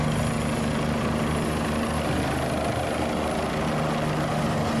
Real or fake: real